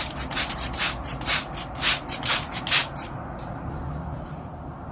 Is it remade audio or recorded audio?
recorded